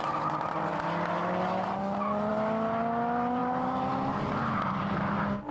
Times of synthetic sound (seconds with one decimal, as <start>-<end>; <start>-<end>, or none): none